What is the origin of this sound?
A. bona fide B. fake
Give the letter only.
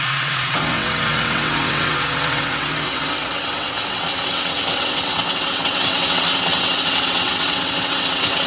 B